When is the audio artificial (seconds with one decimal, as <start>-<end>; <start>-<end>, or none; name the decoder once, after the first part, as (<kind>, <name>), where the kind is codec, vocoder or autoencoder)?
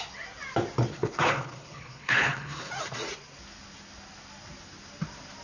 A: 0.9-2.7 (codec, HILCodec)